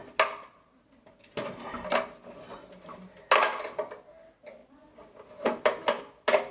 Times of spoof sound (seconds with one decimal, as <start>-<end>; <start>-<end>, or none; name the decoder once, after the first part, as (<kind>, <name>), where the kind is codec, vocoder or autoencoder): none